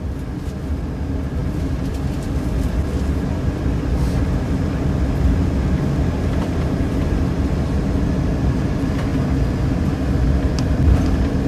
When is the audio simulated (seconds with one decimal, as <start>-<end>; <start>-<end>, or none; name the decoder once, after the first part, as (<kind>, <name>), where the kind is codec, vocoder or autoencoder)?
none